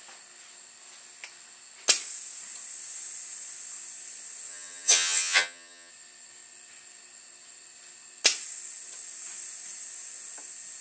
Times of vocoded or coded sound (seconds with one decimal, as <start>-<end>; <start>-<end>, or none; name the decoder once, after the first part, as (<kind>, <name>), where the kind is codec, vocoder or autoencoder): 4.5-5.9 (vocoder, HiFi-GAN)